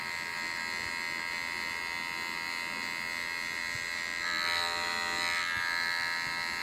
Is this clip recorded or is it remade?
recorded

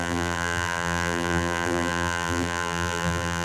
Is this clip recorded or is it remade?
remade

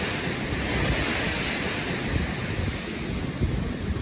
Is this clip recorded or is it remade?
recorded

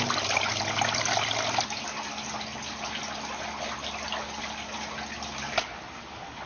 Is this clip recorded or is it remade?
recorded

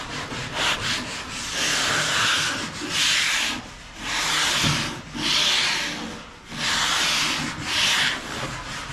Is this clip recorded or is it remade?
recorded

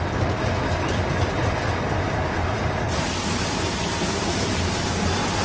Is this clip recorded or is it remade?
recorded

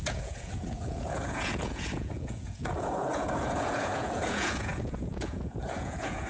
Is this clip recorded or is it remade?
remade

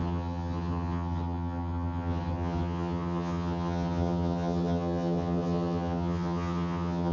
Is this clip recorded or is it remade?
remade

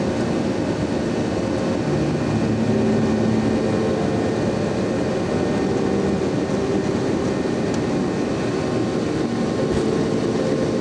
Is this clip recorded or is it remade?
recorded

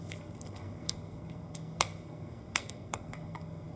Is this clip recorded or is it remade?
remade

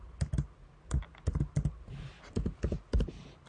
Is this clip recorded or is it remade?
recorded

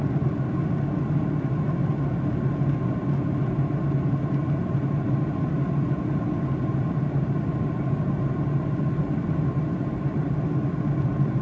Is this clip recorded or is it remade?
recorded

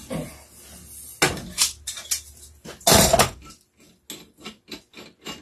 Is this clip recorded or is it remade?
recorded